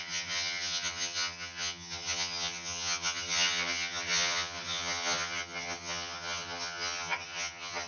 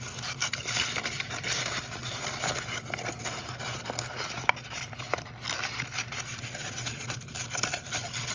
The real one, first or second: second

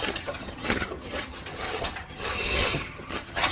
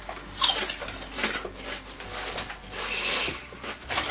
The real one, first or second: second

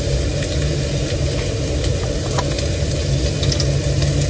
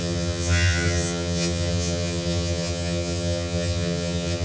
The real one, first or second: first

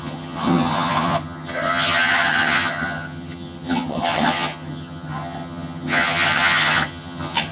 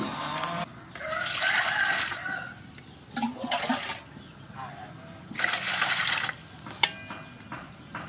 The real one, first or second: second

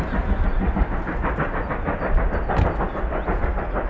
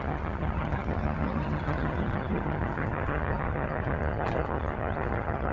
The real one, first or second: first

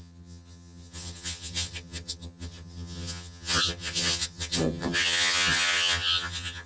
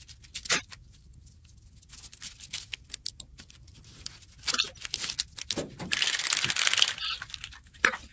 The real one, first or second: second